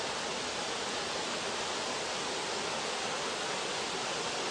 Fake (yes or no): no